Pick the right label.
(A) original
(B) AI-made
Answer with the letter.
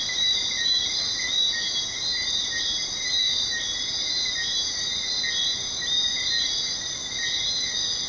A